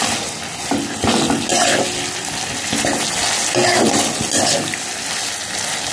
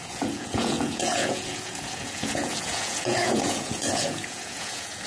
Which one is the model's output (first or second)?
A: second